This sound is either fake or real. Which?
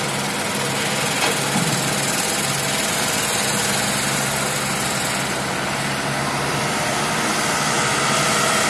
real